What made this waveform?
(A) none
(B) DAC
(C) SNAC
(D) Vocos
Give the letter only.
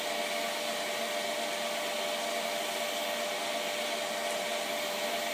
A